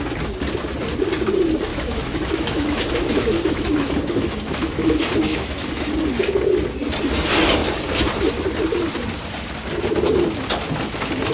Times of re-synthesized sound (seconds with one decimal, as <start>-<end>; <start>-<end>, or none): 1.7-5.9